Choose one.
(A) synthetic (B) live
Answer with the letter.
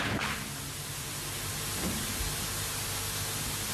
B